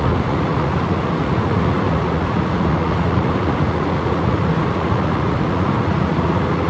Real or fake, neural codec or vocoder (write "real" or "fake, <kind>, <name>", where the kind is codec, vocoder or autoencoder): fake, vocoder, Vocos